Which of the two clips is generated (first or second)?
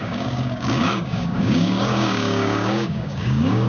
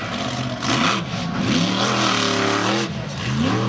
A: first